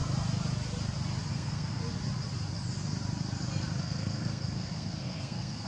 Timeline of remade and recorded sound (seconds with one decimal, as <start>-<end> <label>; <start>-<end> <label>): 0.0-1.3 recorded; 1.3-1.8 remade; 1.8-3.8 recorded; 3.8-5.7 remade